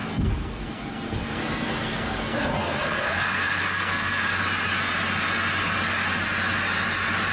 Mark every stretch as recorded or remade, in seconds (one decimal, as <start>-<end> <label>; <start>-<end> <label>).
0.0-4.2 remade; 4.2-7.3 recorded